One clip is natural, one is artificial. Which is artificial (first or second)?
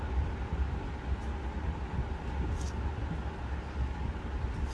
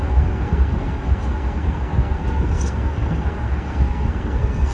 second